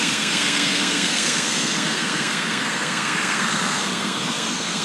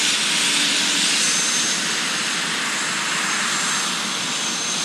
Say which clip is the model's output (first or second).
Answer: first